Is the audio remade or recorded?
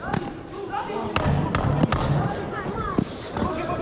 recorded